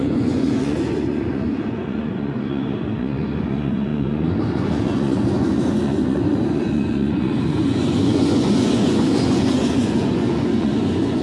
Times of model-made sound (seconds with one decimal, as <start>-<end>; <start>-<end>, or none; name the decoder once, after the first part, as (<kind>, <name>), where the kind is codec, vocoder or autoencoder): 0.0-11.2 (vocoder, Vocos)